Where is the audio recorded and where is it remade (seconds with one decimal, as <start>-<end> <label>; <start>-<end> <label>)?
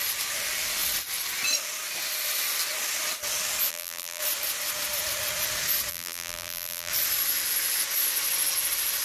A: 0.0-3.7 recorded; 3.7-4.2 remade; 4.2-5.9 recorded; 5.9-6.9 remade; 6.9-9.0 recorded